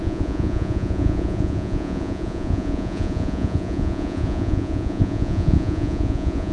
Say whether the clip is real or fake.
fake